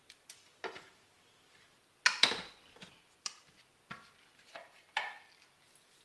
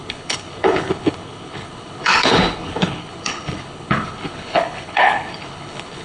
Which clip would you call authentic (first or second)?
first